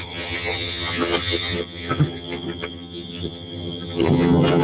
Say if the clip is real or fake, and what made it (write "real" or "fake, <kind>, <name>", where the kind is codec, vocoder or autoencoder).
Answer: fake, vocoder, HiFi-GAN